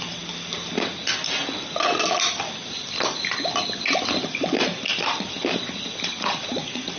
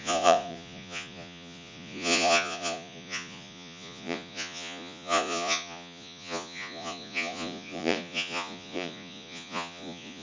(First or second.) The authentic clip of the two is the first